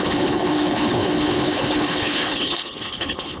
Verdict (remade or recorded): remade